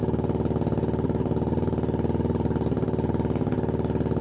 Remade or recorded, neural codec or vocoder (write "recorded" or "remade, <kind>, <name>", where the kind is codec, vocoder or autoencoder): recorded